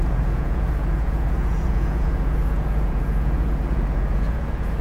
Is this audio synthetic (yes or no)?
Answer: yes